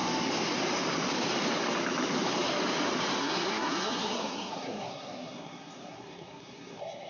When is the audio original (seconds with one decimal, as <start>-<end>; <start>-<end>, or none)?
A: 0.0-3.2